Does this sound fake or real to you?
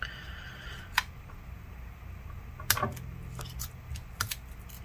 real